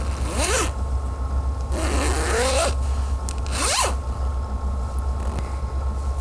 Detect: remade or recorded recorded